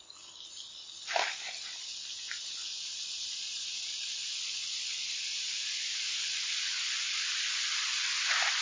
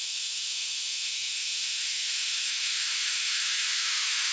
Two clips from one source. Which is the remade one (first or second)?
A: second